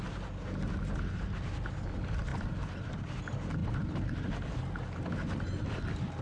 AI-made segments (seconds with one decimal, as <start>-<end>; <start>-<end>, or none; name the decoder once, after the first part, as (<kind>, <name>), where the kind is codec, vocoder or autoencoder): none